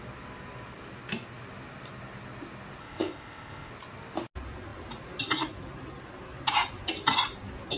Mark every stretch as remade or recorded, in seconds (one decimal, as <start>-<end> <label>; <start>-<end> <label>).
0.0-2.8 recorded; 2.8-3.7 remade; 3.7-7.8 recorded